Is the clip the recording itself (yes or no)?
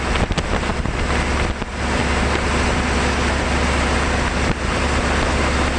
yes